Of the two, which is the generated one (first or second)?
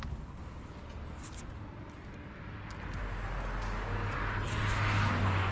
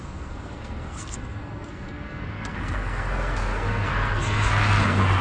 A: second